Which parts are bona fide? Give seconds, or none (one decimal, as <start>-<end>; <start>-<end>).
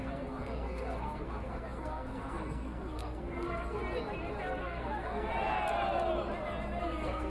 3.8-4.6; 5.3-6.8